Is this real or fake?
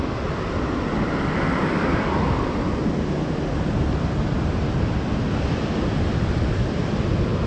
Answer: real